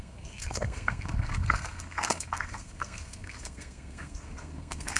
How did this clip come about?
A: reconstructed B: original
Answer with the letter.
A